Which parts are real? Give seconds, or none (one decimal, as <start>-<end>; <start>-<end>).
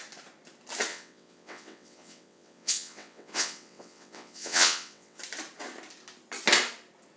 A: 0.0-0.9; 5.2-7.2